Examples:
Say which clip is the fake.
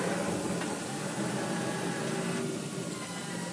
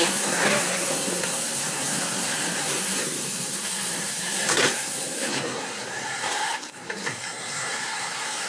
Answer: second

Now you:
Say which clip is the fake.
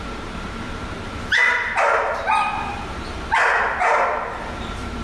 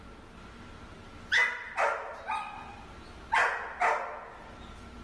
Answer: first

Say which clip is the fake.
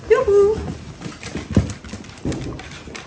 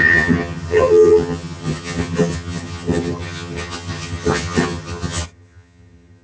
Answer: second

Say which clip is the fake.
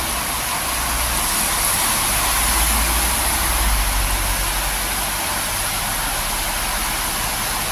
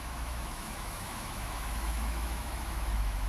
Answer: second